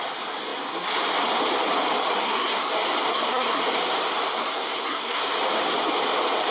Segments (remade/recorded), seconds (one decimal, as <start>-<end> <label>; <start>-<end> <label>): 0.0-2.2 recorded; 2.2-2.7 remade; 2.7-3.1 recorded; 3.1-3.6 remade; 3.6-4.4 recorded; 4.4-5.2 remade; 5.2-6.5 recorded